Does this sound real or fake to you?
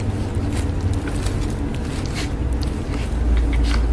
real